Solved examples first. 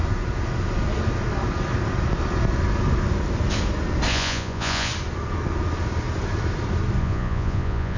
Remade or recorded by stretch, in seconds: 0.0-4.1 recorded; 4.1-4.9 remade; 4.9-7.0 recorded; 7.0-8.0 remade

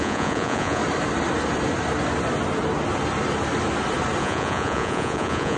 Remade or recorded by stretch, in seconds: 0.0-0.8 remade; 0.8-4.2 recorded; 4.2-5.6 remade